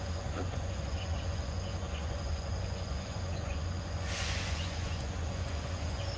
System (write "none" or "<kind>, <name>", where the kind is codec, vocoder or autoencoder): vocoder, Vocos